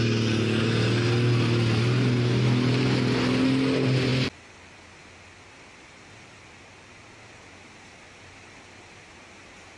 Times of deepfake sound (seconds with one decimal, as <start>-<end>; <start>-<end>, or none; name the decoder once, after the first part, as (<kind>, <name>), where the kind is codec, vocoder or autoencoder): none